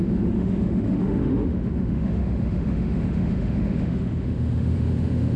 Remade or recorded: remade